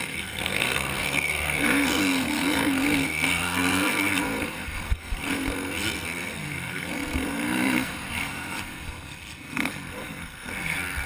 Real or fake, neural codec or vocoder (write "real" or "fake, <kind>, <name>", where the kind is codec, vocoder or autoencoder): fake, codec, SNAC